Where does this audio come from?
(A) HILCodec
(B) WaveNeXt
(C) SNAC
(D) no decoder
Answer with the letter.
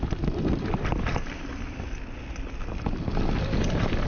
D